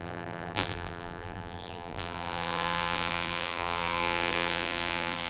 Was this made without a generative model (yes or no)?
no